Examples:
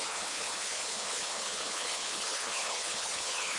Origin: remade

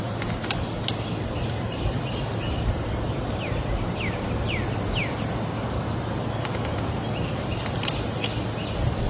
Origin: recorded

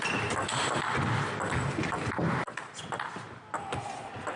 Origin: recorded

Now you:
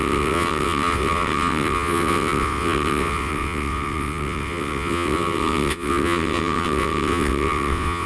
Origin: remade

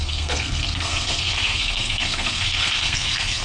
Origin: remade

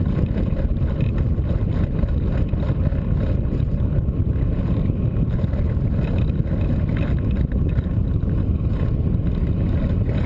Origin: recorded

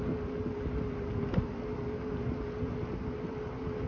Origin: recorded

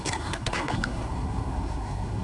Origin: remade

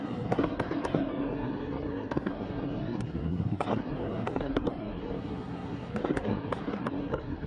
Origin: remade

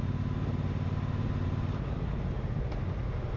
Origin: recorded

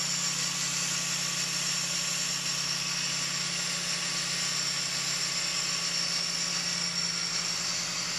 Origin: recorded